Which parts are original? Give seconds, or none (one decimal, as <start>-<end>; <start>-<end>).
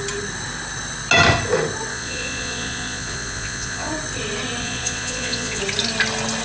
0.0-1.9; 3.9-4.6; 5.6-6.4